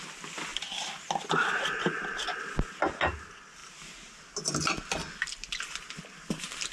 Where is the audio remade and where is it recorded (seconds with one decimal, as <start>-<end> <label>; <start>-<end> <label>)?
0.0-6.7 recorded